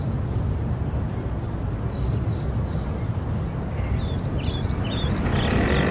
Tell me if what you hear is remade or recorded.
recorded